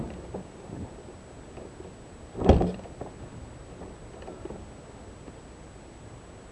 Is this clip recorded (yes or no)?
yes